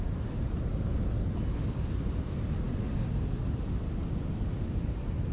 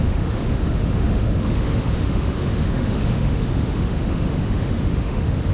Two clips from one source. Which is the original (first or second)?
first